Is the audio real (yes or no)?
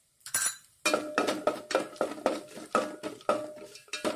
yes